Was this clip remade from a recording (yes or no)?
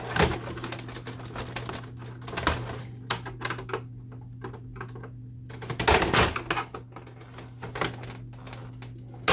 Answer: no